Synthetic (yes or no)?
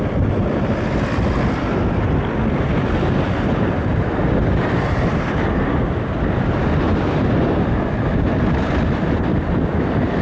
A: no